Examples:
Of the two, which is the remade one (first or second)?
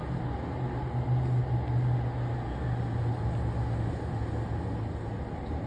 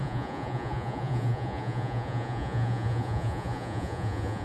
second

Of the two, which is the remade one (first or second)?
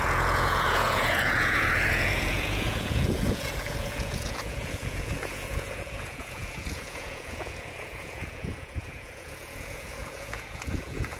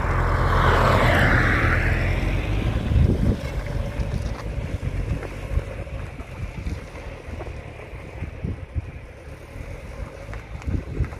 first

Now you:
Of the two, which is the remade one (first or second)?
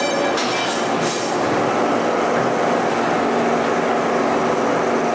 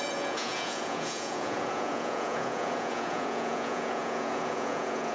second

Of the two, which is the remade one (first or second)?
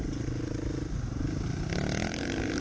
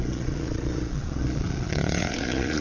second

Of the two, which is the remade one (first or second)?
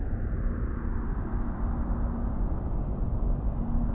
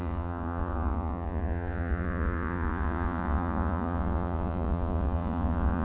second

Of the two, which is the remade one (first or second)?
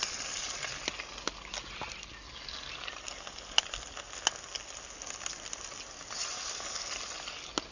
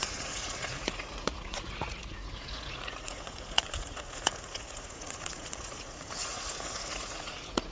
second